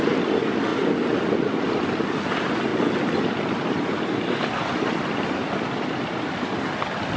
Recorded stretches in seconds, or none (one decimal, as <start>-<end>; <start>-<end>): 0.0-7.2